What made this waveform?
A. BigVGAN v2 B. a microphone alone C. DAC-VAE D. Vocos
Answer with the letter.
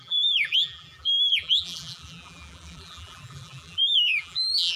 A